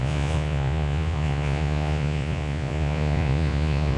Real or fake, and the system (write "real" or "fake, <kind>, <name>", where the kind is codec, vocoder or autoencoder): fake, vocoder, Vocos